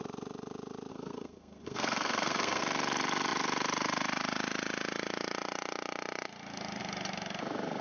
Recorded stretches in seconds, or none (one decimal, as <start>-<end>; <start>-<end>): 0.0-0.9; 2.6-7.8